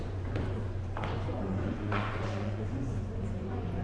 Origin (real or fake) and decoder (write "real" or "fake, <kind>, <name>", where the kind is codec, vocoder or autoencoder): fake, vocoder, Vocos